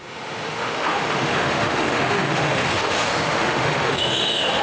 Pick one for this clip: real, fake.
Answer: fake